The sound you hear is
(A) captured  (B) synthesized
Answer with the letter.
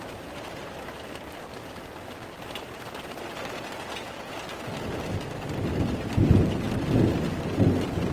A